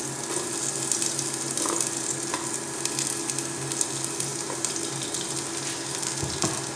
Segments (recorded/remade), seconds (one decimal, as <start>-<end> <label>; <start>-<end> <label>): 0.0-6.8 recorded